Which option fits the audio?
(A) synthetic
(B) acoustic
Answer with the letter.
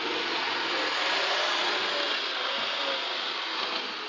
B